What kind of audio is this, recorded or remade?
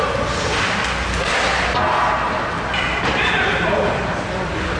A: recorded